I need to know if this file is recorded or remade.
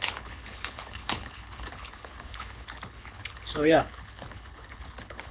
remade